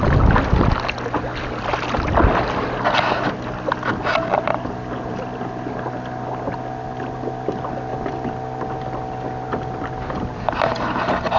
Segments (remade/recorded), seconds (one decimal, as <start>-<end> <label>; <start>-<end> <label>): 0.0-11.4 recorded

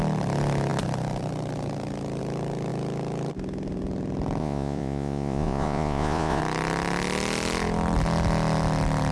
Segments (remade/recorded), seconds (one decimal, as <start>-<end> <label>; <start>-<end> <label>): 0.0-4.4 recorded; 4.4-6.4 remade; 6.4-9.1 recorded

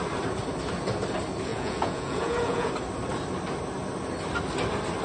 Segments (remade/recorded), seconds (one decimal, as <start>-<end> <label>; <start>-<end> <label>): 0.0-1.5 recorded; 1.5-2.7 remade; 2.7-5.0 recorded

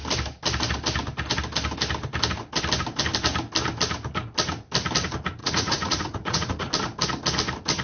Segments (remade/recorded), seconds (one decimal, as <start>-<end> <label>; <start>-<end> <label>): 0.0-5.4 recorded; 5.4-6.7 remade; 6.7-7.8 recorded

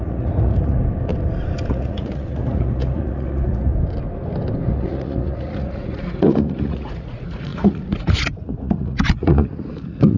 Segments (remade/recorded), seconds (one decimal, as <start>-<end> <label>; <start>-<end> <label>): 0.0-0.8 remade; 0.8-1.7 recorded; 1.7-3.7 remade; 3.7-4.7 recorded; 4.7-10.2 remade

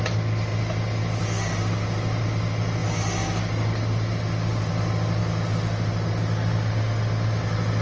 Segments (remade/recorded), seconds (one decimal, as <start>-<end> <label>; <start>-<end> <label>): 0.0-7.8 recorded

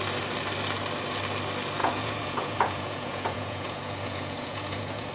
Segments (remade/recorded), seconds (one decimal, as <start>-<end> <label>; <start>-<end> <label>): 0.0-1.8 recorded; 1.8-5.1 remade

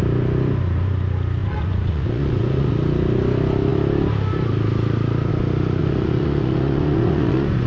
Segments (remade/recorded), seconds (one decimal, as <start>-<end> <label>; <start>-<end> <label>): 0.0-1.4 recorded; 1.4-2.7 remade; 2.7-5.8 recorded; 5.8-7.7 remade